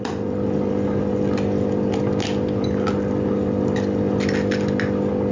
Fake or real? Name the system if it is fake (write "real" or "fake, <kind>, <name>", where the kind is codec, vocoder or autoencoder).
real